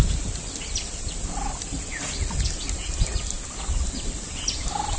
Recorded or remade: remade